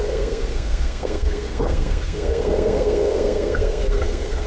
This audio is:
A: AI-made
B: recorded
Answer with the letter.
A